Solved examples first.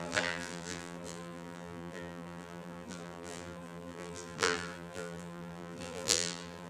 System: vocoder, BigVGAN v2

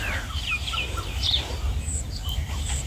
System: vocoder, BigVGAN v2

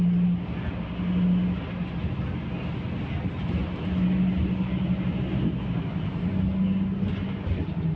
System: none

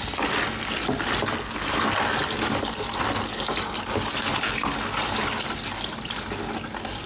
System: none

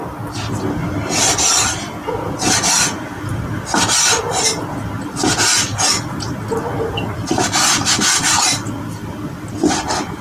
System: none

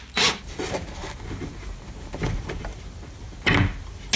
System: none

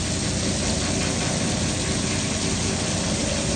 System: none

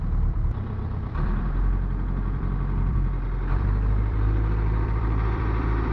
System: vocoder, BigVGAN v2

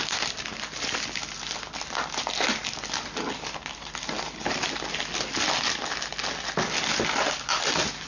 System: none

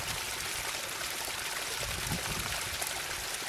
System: none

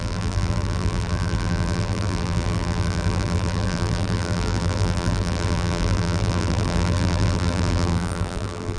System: vocoder, BigVGAN v2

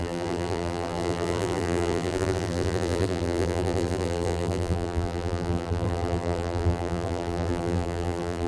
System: vocoder, BigVGAN v2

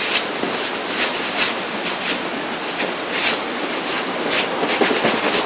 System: none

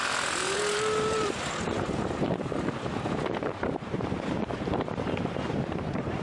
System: vocoder, BigVGAN v2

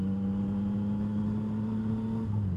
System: none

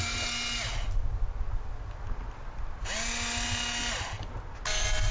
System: none